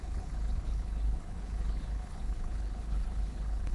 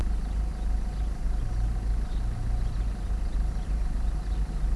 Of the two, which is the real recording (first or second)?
second